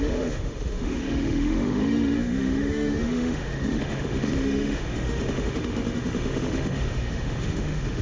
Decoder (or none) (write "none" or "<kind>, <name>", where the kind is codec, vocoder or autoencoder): autoencoder, DAC-VAE